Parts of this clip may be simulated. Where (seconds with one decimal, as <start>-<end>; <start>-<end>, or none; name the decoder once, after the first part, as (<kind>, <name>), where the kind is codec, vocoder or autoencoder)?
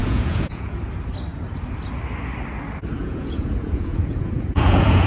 0.0-0.8 (vocoder, Vocos); 3.0-5.1